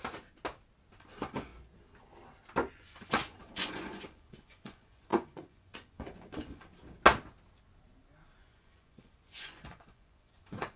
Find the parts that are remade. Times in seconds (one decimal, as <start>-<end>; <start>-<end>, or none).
1.0-1.5; 2.7-6.7; 8.4-10.8

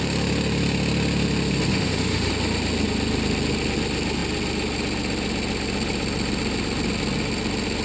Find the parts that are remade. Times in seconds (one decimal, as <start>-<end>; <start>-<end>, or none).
1.7-2.3

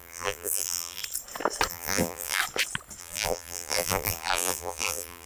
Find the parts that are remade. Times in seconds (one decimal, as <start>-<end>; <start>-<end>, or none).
0.0-1.0; 1.7-2.4; 3.0-5.3

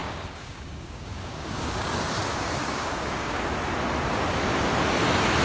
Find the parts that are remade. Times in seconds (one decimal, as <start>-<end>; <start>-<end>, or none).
0.0-1.9; 2.3-3.4

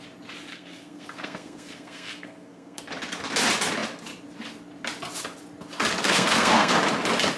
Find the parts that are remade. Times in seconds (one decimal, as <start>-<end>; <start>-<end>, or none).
0.5-2.8; 6.0-6.7